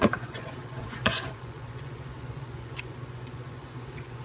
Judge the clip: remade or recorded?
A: remade